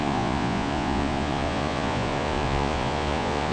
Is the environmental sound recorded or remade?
remade